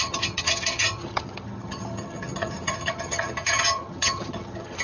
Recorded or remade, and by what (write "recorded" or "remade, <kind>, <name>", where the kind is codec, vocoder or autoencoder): remade, vocoder, HiFi-GAN